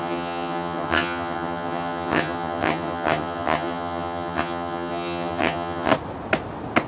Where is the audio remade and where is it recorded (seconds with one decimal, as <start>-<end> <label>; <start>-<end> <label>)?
0.0-5.9 remade; 5.9-6.9 recorded